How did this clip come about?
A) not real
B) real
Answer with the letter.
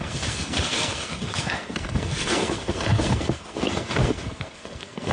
A